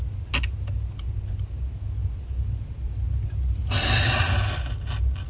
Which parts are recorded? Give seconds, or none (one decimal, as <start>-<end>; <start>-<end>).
0.0-5.3